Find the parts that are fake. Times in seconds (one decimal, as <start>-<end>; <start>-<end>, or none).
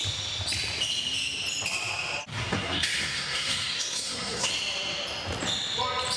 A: 2.3-4.5